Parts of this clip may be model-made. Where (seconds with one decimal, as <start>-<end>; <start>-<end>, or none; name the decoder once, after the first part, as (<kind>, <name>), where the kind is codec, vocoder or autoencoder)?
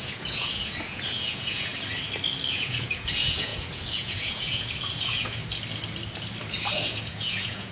0.0-1.7 (vocoder, Vocos); 2.5-5.4; 6.7-7.7